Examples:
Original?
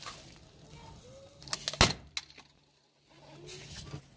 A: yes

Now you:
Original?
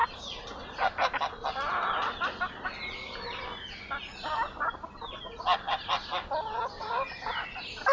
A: yes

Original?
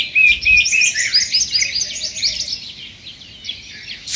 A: yes